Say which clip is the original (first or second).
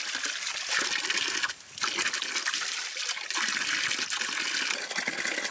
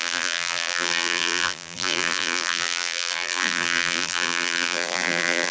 first